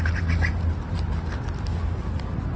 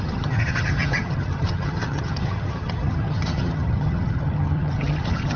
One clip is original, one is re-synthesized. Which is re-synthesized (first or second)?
second